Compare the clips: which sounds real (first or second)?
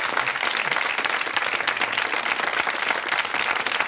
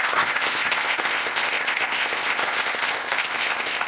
first